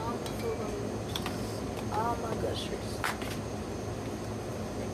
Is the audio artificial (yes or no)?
no